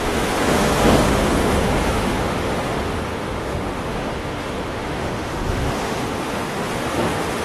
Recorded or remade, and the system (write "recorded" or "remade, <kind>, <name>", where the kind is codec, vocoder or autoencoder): remade, autoencoder, DAC-VAE